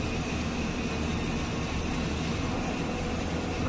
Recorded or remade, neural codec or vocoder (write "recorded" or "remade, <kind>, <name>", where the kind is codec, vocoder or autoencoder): recorded